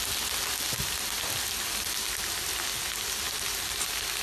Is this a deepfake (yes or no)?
no